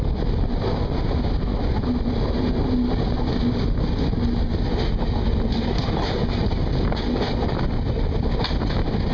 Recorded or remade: recorded